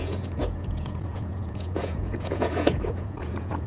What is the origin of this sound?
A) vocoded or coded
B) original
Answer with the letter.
A